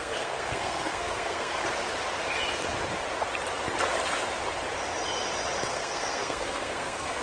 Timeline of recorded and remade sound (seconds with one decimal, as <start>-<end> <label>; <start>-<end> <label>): 0.0-1.6 remade; 1.6-5.7 recorded; 5.7-7.2 remade